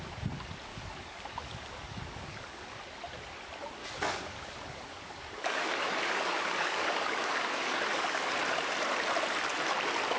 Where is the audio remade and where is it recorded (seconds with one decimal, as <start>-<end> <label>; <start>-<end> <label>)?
0.0-0.7 recorded; 0.7-2.8 remade; 2.8-3.8 recorded; 3.8-8.3 remade; 8.3-10.2 recorded